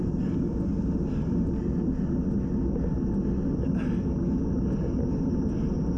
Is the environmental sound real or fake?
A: real